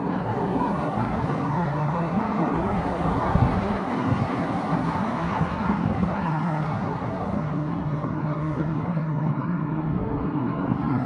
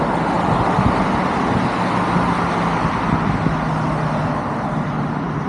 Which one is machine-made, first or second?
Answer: first